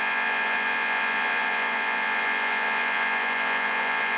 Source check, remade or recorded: remade